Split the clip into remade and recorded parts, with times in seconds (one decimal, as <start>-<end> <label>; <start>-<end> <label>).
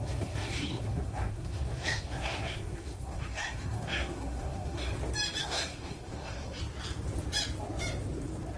0.0-4.9 remade; 4.9-5.4 recorded; 5.4-6.6 remade; 6.6-8.6 recorded